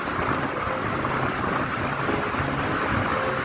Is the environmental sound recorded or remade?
recorded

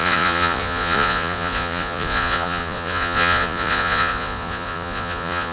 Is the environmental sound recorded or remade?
remade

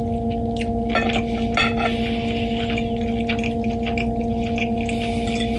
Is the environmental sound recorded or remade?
recorded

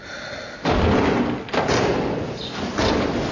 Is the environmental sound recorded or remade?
recorded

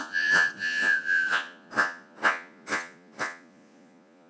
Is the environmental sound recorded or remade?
remade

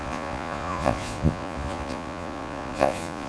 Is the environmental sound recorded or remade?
remade